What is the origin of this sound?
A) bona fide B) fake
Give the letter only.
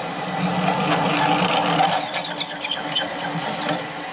A